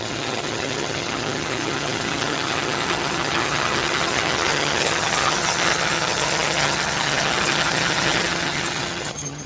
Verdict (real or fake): fake